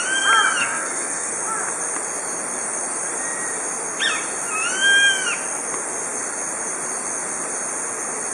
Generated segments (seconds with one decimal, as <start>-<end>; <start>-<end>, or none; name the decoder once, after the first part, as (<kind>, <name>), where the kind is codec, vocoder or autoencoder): 0.6-1.3 (codec, SNAC)